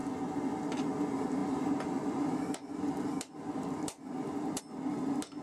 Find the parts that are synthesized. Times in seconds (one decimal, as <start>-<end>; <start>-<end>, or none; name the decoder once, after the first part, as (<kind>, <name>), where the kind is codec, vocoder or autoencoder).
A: 1.4-4.6 (vocoder, BigVGAN v2)